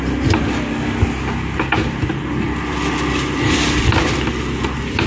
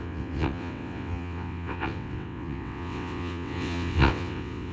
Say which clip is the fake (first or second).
second